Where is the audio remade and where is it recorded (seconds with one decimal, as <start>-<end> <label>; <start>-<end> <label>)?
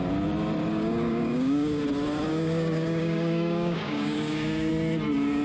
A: 0.0-0.7 recorded; 0.7-1.8 remade; 1.8-2.3 recorded; 2.3-4.7 remade; 4.7-5.4 recorded